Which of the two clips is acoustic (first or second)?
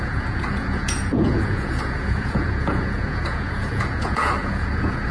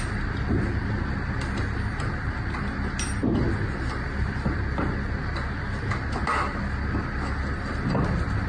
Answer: second